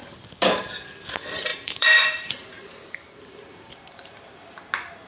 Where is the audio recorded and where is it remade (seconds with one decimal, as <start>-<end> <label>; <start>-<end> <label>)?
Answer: 0.0-1.5 recorded; 1.5-4.6 remade; 4.6-5.1 recorded